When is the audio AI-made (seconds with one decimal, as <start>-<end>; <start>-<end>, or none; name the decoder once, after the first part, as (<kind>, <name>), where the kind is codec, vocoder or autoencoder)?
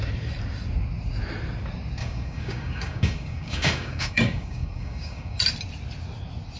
2.0-5.4 (codec, DAC)